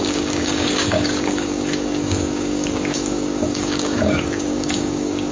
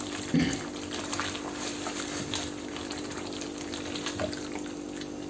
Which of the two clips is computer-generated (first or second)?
first